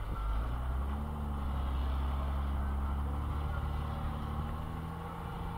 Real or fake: real